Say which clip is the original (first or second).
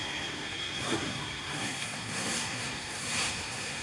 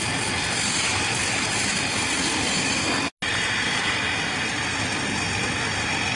second